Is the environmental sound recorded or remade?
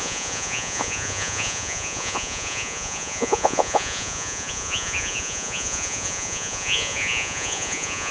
remade